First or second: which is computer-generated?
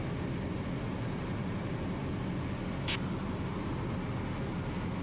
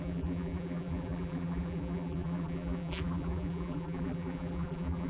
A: second